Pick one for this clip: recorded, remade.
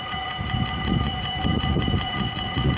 remade